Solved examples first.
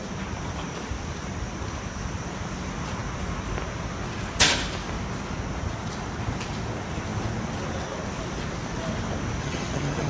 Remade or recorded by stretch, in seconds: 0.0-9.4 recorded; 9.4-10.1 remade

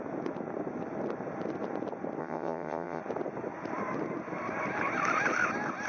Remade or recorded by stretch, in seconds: 0.0-2.2 recorded; 2.2-3.0 remade; 3.0-5.9 recorded

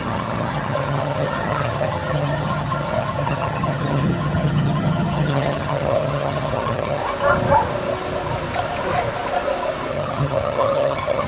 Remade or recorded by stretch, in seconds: 0.0-7.0 remade; 7.0-9.9 recorded; 9.9-11.3 remade